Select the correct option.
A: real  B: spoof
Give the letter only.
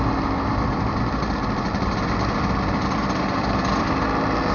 A